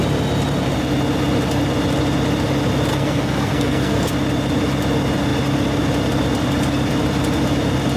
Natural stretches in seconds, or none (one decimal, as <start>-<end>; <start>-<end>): 0.0-2.9; 4.1-8.0